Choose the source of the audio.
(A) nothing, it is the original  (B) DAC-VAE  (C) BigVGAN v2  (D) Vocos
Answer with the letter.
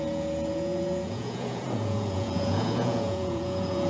D